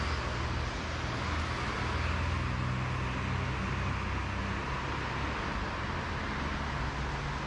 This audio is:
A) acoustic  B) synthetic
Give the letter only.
A